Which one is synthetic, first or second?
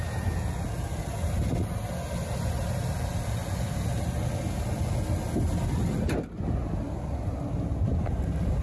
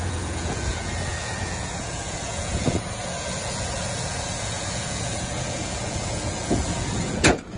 second